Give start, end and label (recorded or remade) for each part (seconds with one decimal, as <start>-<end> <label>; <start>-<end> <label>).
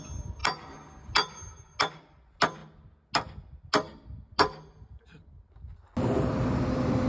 0.0-7.1 recorded